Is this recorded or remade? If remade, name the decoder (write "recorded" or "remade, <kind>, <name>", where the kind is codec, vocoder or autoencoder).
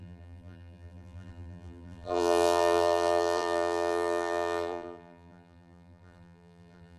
remade, vocoder, BigVGAN v2